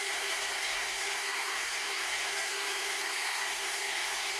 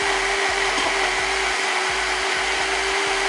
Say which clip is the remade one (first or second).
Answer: first